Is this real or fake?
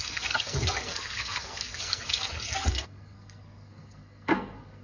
fake